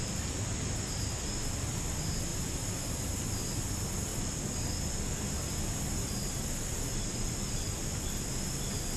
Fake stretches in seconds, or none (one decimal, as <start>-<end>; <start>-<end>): none